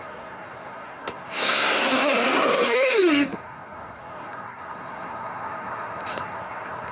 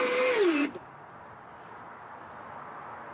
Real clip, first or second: second